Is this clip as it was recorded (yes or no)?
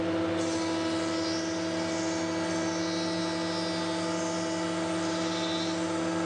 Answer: yes